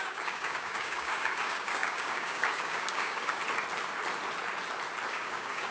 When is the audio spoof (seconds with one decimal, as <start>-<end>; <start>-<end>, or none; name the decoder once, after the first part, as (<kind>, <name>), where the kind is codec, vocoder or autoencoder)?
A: 0.0-3.4 (codec, DAC); 5.1-5.7